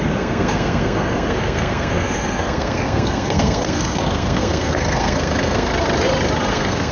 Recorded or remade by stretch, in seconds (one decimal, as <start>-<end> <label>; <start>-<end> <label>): 0.0-5.7 remade; 5.7-6.5 recorded; 6.5-6.9 remade